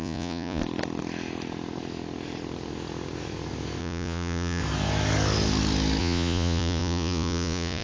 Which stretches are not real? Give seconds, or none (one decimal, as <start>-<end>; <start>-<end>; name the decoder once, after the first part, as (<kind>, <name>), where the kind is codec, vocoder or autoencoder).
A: 0.0-0.6 (vocoder, Vocos); 3.8-4.6; 6.0-7.8